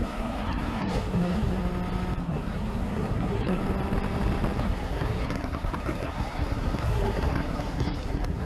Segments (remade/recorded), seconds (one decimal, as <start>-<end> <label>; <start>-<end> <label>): 0.0-1.6 remade; 1.6-2.2 recorded; 2.2-3.6 remade; 3.6-4.6 recorded; 4.6-8.5 remade

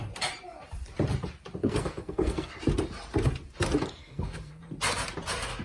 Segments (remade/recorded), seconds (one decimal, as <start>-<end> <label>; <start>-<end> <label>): 0.0-1.6 recorded; 1.6-2.5 remade; 2.5-4.0 recorded; 4.0-4.6 remade; 4.6-5.6 recorded

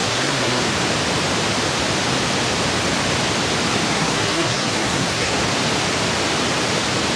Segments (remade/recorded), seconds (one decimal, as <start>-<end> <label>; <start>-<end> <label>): 0.0-0.6 remade; 0.6-3.9 recorded; 3.9-5.4 remade; 5.4-7.2 recorded

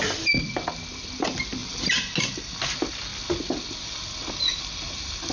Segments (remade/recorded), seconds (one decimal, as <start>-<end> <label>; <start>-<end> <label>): 0.0-5.3 recorded

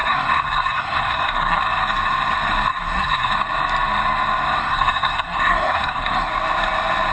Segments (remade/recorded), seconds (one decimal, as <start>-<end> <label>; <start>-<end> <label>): 0.0-1.6 remade; 1.6-2.7 recorded; 2.7-3.3 remade; 3.3-4.6 recorded; 4.6-6.3 remade; 6.3-7.1 recorded

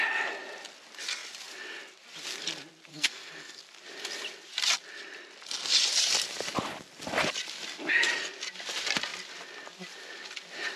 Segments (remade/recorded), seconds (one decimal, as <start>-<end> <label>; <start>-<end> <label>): 0.0-2.9 recorded; 2.9-3.6 remade; 3.6-10.8 recorded